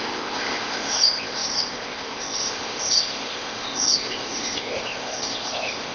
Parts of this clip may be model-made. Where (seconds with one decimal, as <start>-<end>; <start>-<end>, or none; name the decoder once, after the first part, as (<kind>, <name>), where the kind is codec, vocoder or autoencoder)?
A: 0.0-5.9 (codec, ZipCodec)